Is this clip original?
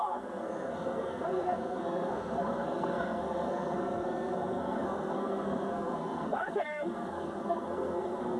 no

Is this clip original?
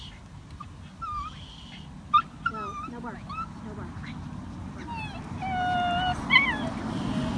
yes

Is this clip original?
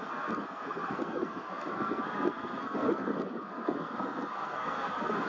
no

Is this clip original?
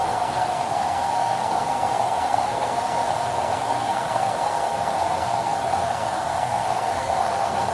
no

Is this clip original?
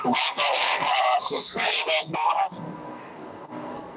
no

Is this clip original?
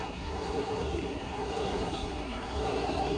no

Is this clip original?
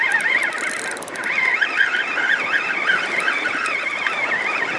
yes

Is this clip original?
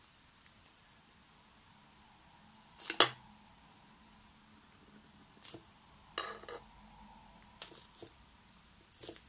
yes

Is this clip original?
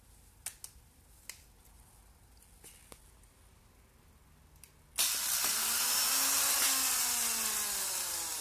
yes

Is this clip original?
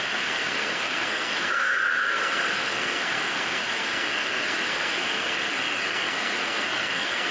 no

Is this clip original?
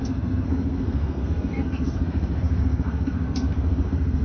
no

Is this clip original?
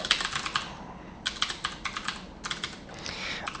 yes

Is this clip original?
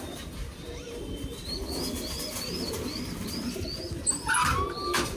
yes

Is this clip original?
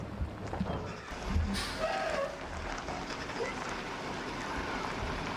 yes